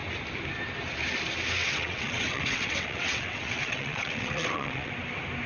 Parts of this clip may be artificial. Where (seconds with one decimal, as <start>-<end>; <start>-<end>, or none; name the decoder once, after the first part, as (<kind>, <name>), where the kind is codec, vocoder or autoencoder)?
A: 1.6-4.9 (vocoder, WaveNeXt)